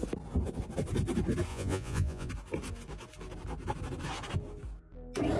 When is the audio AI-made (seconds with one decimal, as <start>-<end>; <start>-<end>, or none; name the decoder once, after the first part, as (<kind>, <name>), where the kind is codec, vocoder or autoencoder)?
1.5-2.3 (vocoder, Vocos)